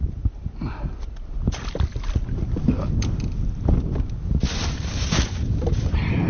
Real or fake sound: real